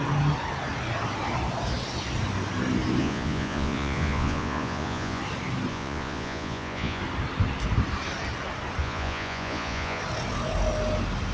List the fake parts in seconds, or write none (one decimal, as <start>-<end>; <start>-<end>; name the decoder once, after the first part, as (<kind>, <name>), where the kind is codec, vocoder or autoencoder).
3.0-5.2 (vocoder, Vocos); 5.7-7.0; 8.8-10.0